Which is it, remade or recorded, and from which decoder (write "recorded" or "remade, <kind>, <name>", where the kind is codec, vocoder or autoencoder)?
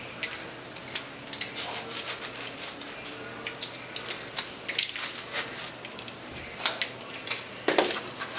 recorded